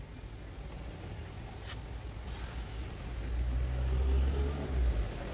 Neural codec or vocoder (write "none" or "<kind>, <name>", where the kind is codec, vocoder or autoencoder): none